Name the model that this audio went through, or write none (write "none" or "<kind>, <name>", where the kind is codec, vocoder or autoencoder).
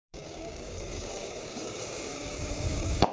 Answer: codec, DAC